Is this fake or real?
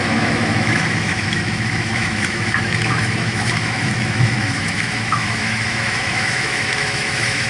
fake